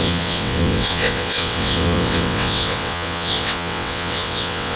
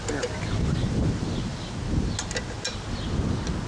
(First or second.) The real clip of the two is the second